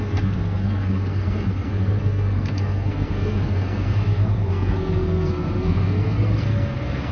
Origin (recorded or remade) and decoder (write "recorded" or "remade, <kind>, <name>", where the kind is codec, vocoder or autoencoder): remade, codec, SNAC